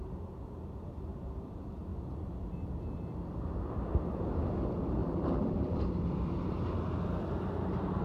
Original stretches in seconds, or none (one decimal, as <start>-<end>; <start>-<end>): 0.0-5.0; 5.8-8.0